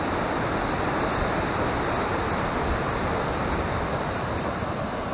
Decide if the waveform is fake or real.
real